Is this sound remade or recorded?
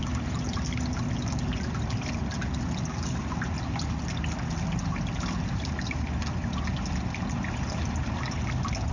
recorded